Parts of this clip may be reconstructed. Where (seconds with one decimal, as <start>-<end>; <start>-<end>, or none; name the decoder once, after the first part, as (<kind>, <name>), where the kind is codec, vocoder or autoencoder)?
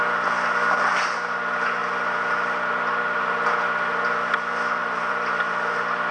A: 4.8-5.5 (vocoder, BigVGAN v2)